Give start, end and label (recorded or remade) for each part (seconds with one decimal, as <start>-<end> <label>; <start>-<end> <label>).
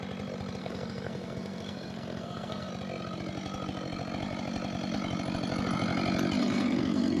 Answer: 0.0-0.6 recorded; 0.6-2.7 remade; 2.7-6.4 recorded; 6.4-7.2 remade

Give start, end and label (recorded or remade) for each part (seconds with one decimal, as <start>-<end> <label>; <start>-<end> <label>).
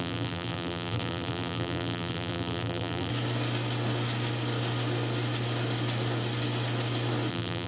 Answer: 0.0-3.1 remade; 3.1-7.3 recorded; 7.3-7.7 remade